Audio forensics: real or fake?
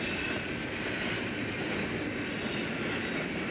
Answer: real